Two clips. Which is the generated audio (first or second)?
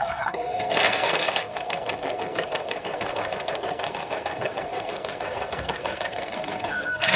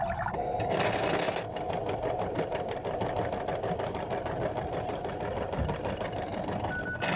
first